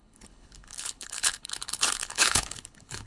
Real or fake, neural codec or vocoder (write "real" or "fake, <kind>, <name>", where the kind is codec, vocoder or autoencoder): fake, codec, HILCodec